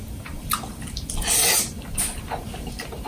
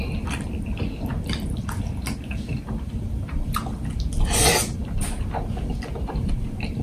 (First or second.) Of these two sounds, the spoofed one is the first